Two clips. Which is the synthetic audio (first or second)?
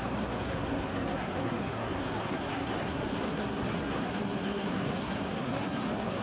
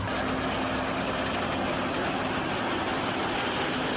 first